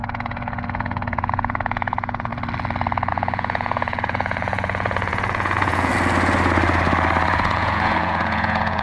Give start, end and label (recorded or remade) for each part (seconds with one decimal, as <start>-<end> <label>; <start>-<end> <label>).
0.0-2.3 remade; 2.3-3.1 recorded; 3.1-5.9 remade; 5.9-7.3 recorded; 7.3-8.8 remade